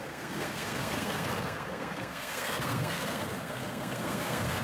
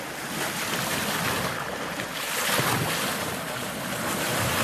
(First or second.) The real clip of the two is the second